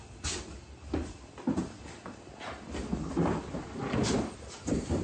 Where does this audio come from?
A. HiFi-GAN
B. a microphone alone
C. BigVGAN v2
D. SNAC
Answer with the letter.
B